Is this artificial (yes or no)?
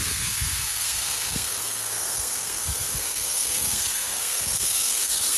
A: yes